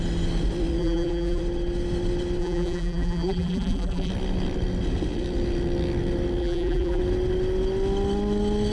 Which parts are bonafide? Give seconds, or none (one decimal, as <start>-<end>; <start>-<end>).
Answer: 0.0-0.8; 1.4-2.4; 4.1-6.4; 7.0-8.7